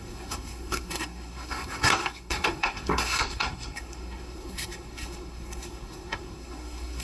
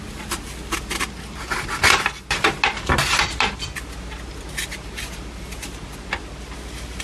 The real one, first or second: second